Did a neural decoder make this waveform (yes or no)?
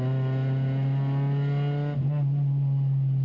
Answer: no